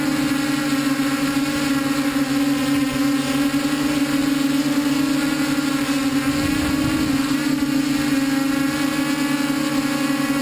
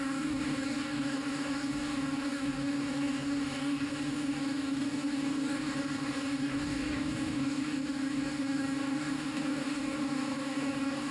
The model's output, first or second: second